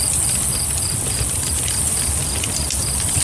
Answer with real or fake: fake